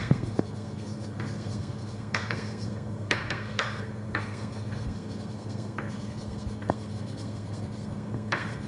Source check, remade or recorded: remade